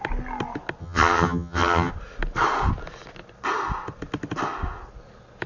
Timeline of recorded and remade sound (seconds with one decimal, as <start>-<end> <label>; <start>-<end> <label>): 0.0-0.8 recorded; 0.8-1.9 remade; 1.9-5.5 recorded